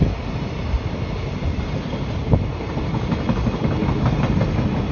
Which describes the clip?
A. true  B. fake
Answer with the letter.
A